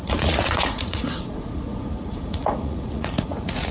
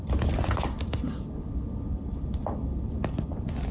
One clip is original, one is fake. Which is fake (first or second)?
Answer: first